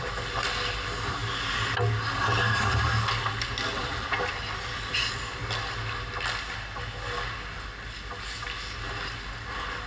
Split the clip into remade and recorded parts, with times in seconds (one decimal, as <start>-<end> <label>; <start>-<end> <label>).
0.0-1.2 remade; 1.2-3.2 recorded; 3.2-5.4 remade; 5.4-9.5 recorded; 9.5-9.9 remade